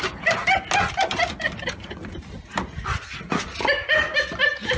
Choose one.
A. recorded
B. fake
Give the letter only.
A